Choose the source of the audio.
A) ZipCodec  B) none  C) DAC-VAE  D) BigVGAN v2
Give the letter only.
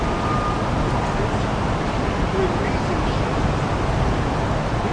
B